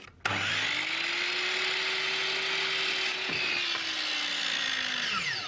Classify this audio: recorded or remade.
recorded